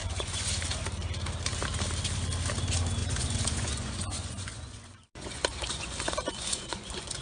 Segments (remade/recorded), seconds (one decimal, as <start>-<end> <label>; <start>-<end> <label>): 0.0-0.5 remade; 0.5-3.0 recorded; 3.0-7.2 remade